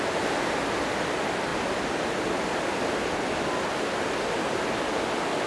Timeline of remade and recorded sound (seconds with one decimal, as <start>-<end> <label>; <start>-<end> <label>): 0.0-5.5 recorded